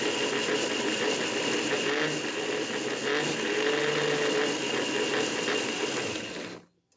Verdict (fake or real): real